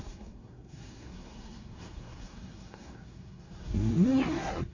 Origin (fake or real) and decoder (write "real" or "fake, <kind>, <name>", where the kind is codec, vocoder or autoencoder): fake, codec, SNAC